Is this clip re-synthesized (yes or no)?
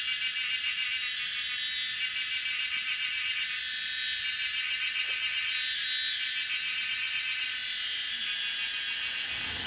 no